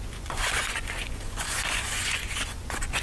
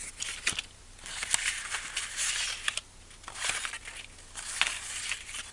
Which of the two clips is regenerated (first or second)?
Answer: first